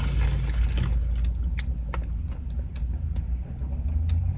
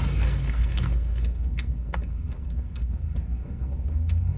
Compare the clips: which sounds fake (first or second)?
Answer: second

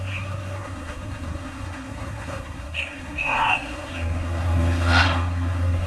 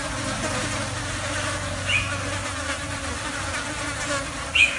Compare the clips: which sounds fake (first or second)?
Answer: first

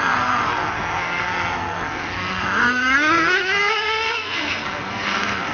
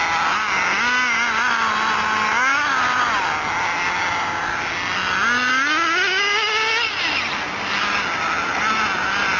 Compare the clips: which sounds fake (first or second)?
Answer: first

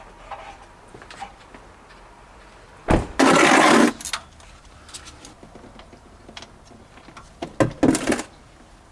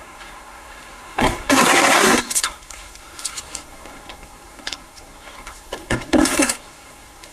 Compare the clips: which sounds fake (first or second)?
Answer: second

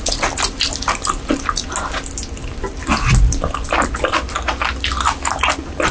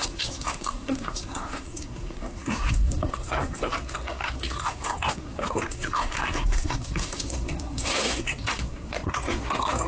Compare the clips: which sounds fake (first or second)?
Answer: second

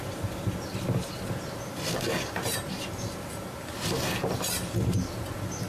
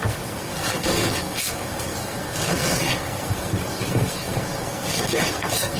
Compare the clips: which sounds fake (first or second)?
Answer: second